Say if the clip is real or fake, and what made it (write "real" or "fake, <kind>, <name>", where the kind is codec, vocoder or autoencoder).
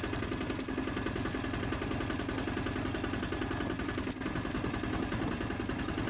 real